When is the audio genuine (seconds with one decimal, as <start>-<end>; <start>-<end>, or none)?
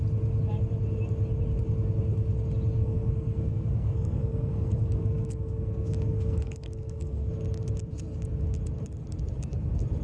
0.0-2.8; 7.3-10.0